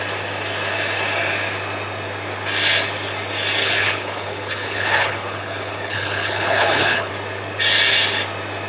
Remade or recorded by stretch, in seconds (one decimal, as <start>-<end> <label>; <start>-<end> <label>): 0.0-3.6 recorded; 3.6-7.1 remade; 7.1-8.7 recorded